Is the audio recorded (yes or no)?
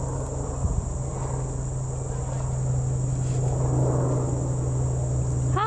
yes